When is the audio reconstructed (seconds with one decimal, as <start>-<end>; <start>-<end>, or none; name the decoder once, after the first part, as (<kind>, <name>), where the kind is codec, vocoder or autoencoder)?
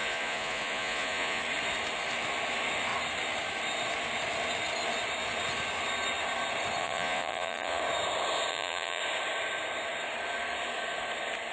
0.0-1.4 (vocoder, Vocos); 6.8-7.8; 8.5-9.0